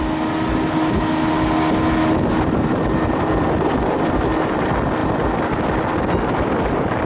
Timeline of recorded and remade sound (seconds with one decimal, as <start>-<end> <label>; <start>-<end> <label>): 0.0-7.1 recorded